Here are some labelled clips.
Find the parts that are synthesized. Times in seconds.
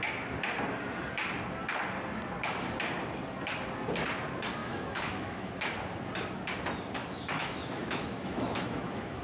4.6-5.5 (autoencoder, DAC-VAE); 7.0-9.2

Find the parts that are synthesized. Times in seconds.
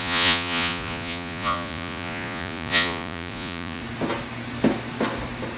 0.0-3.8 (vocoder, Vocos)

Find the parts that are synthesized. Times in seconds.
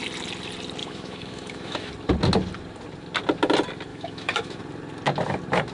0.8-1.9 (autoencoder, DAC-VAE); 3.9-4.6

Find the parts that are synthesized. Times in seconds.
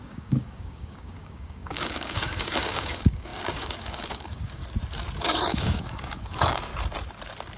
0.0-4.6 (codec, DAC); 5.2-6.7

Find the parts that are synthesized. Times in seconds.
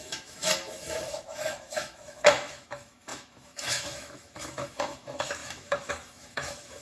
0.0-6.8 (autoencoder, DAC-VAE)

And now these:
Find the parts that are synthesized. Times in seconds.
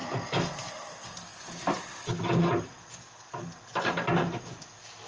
none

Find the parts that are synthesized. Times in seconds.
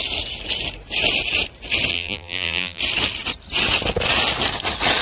1.9-2.8 (vocoder, BigVGAN v2)